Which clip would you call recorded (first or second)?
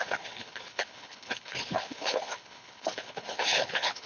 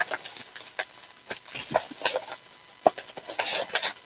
second